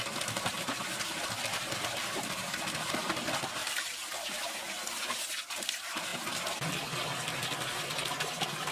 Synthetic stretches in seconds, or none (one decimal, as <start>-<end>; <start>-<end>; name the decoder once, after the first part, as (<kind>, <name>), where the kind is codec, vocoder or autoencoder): 0.5-1.7 (vocoder, BigVGAN v2); 3.6-4.6